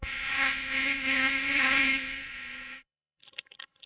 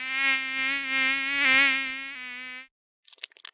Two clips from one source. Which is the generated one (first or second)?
first